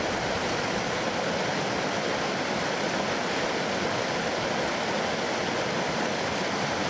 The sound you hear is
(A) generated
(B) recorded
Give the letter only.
B